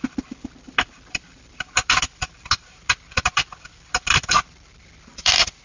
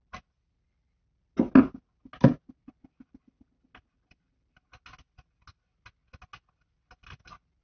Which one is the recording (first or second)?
second